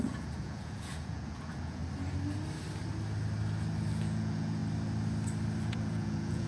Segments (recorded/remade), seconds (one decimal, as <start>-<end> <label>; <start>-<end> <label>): 0.0-1.8 remade; 1.8-3.9 recorded; 3.9-4.6 remade; 4.6-5.6 recorded; 5.6-6.5 remade